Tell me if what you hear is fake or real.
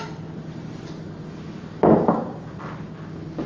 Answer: real